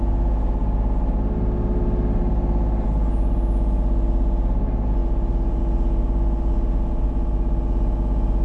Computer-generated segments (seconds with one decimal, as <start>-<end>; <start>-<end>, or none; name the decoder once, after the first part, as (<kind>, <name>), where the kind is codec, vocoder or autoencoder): 5.0-5.6 (vocoder, BigVGAN v2)